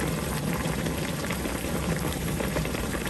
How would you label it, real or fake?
fake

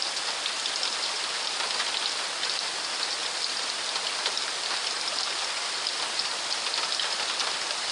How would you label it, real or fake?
real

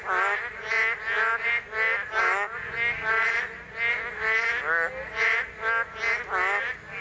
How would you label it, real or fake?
real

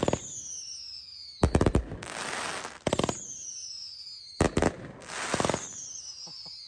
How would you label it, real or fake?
real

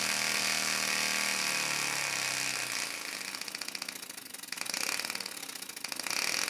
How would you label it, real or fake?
real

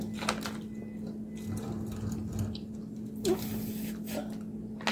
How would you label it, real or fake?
real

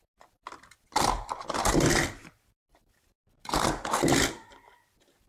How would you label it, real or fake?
real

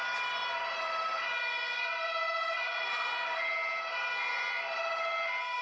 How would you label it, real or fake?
real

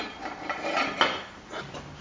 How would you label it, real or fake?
fake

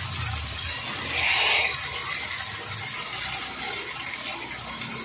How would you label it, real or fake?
real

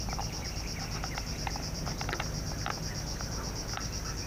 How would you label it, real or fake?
real